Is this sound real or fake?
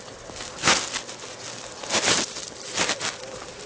real